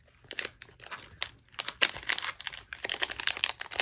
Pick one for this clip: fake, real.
real